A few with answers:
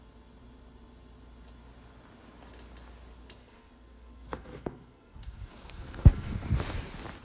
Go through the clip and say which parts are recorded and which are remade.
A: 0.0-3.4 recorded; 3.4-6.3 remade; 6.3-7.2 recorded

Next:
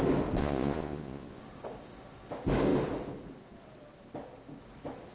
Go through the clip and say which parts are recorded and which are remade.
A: 0.0-0.4 recorded; 0.4-1.4 remade; 1.4-5.1 recorded